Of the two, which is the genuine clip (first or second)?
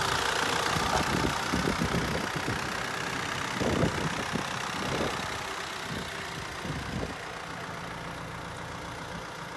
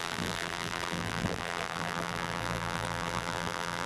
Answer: first